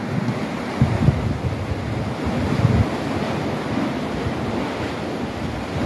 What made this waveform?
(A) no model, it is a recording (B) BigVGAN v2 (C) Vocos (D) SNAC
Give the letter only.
A